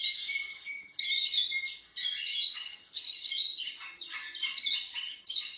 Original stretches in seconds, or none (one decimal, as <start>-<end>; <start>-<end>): 0.0-0.5; 1.5-2.3